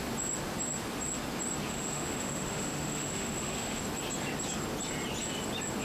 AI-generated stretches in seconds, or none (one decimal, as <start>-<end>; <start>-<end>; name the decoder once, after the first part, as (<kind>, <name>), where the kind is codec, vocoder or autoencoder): 1.7-3.8 (autoencoder, DAC-VAE)